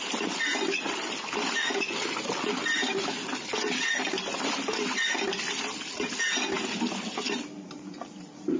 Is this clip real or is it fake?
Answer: real